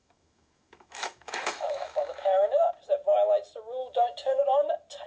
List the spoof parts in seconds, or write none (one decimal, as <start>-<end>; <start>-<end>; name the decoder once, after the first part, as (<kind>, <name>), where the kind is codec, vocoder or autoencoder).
0.0-2.7 (autoencoder, DAC-VAE); 3.8-4.4